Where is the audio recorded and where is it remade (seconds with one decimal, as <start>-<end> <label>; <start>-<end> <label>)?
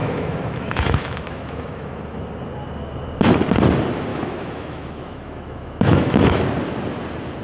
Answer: 0.0-2.2 remade; 2.2-4.1 recorded; 4.1-6.4 remade; 6.4-7.4 recorded